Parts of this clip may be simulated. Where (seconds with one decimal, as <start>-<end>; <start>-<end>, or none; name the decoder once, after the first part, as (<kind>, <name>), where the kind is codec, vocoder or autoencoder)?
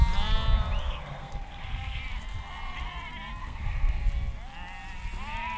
0.8-2.0 (codec, SNAC); 3.4-4.0